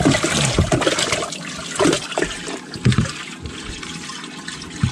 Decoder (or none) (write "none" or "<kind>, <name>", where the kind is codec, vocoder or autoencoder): none